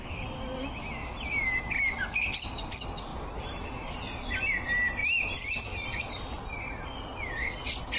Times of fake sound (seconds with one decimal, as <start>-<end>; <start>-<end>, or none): 1.0-2.0; 3.1-4.0; 5.0-6.4

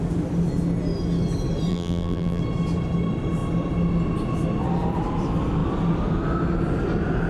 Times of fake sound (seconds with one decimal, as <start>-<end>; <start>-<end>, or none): 1.7-2.4

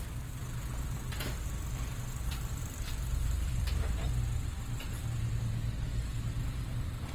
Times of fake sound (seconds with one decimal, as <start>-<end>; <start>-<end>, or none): 0.0-4.2

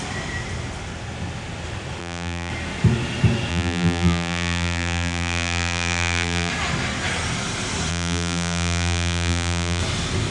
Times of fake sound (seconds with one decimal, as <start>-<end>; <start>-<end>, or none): 2.0-2.5; 3.5-6.5; 7.9-9.8

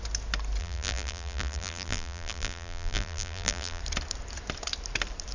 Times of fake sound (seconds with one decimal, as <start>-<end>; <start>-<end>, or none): 0.6-3.8

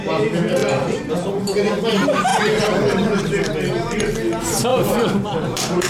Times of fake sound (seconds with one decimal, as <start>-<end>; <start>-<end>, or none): 0.6-1.8; 4.7-5.9